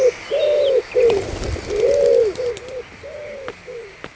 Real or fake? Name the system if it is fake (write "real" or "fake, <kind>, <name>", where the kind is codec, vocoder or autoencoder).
real